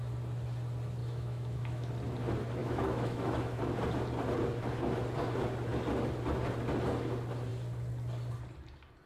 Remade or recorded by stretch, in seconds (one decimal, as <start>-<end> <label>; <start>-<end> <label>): 0.0-1.0 recorded; 1.0-1.9 remade; 1.9-2.6 recorded; 2.6-3.6 remade; 3.6-9.1 recorded